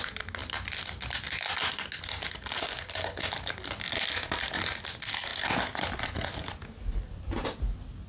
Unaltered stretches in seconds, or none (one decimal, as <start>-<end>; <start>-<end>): 0.0-8.1